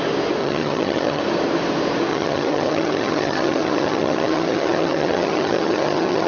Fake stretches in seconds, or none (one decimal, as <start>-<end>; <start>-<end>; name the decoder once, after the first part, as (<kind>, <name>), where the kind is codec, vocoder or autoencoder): 0.4-1.2 (vocoder, HiFi-GAN); 2.1-6.3

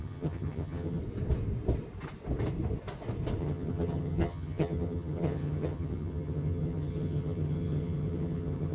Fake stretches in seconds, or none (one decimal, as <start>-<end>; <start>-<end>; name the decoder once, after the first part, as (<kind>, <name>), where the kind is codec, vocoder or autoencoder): 0.0-1.0 (vocoder, HiFi-GAN); 3.4-8.7

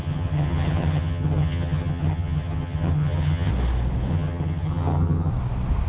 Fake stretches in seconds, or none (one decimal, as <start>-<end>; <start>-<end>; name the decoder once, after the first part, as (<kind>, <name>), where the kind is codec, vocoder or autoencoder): 0.0-3.5 (vocoder, HiFi-GAN); 4.1-5.3

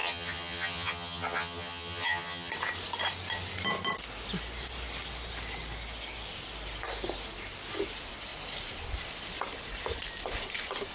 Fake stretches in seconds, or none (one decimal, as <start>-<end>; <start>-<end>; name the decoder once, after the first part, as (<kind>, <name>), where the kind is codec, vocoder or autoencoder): 0.0-2.5 (vocoder, HiFi-GAN)

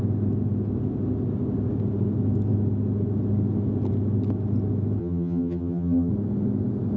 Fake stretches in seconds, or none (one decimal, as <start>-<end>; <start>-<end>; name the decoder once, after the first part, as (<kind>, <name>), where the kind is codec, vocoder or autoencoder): 5.0-6.1 (vocoder, HiFi-GAN)